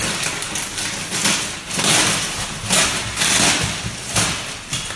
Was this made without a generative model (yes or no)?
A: yes